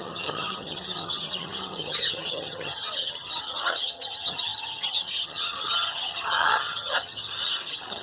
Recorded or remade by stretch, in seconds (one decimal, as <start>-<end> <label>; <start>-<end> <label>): 0.0-8.0 remade